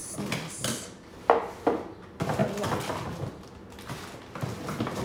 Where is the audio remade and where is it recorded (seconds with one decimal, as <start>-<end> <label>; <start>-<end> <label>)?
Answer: 0.0-5.0 recorded